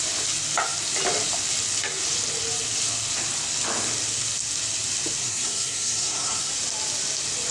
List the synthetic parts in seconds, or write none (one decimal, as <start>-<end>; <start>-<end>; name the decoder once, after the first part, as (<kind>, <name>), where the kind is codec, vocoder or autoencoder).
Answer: 5.2-6.5 (codec, SNAC)